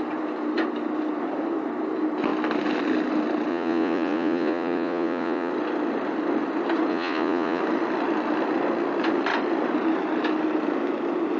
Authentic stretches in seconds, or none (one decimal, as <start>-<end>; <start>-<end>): 0.0-3.5; 5.5-6.9; 7.6-11.4